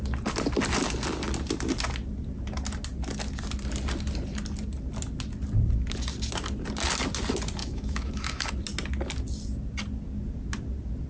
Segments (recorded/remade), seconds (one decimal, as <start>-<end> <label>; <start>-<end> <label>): 0.0-7.6 recorded; 7.6-8.5 remade; 8.5-11.1 recorded